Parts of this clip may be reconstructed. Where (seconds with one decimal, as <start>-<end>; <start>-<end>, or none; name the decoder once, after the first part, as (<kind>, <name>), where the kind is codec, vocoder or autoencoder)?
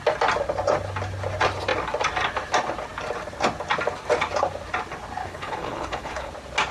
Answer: 5.2-6.3 (codec, HILCodec)